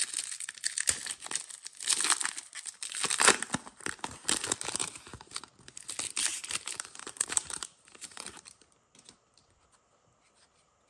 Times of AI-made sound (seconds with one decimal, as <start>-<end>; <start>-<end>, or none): 4.8-5.5; 6.3-9.6